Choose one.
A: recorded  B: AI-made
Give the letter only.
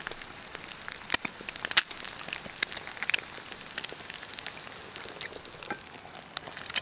A